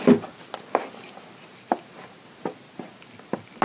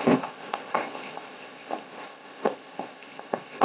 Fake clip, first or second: second